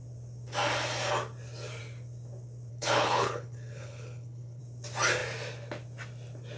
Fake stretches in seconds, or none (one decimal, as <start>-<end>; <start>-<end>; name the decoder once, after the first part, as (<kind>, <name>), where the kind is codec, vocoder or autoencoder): 2.7-4.6 (codec, HILCodec)